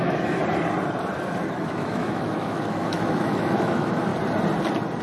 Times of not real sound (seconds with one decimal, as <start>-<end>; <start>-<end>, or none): 0.0-0.4; 1.5-4.1